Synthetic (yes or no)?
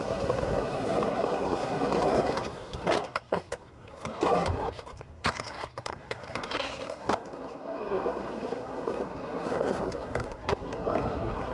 yes